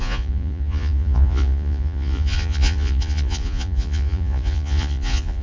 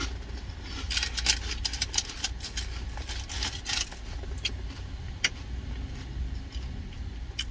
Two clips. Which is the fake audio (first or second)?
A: first